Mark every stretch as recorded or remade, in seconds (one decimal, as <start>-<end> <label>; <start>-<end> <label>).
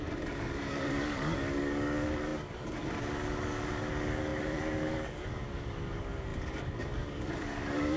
0.0-8.0 remade